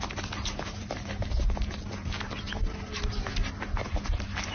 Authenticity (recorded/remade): recorded